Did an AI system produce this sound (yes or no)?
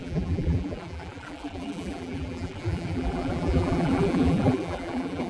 yes